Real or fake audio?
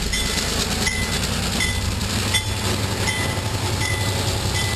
real